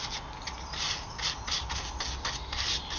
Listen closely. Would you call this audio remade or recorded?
recorded